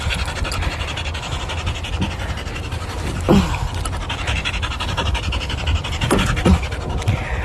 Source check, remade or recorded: recorded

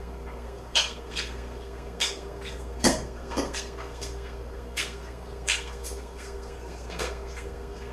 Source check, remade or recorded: remade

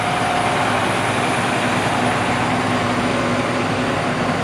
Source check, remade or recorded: recorded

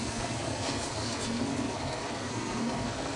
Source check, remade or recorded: remade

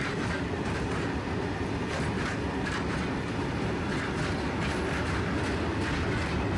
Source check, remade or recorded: recorded